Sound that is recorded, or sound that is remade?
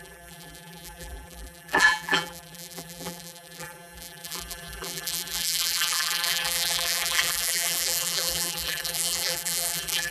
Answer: remade